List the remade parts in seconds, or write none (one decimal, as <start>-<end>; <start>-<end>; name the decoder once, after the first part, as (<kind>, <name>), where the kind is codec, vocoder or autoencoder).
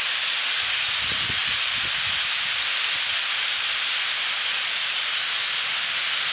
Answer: none